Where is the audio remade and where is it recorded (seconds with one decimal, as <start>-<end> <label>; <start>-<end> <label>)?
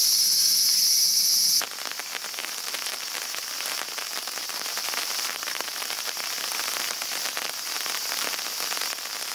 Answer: 0.0-2.4 recorded; 2.4-6.3 remade; 6.3-9.3 recorded